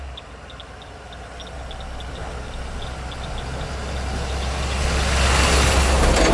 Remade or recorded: recorded